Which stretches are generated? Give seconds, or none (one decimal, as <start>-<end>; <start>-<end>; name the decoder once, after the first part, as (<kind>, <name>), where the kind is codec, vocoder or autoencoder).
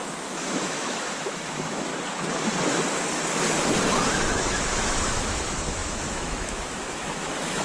0.0-1.9 (autoencoder, DAC-VAE); 4.1-7.6